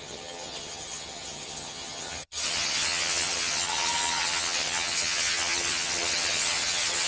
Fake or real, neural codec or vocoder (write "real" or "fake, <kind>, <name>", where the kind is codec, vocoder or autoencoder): fake, vocoder, HiFi-GAN